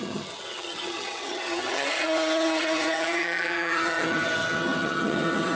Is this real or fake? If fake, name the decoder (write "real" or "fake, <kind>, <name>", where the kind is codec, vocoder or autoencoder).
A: fake, vocoder, HiFi-GAN